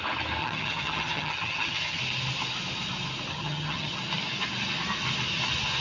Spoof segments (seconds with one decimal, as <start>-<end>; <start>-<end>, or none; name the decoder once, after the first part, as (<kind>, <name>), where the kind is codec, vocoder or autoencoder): 0.4-2.0 (vocoder, HiFi-GAN); 3.3-4.0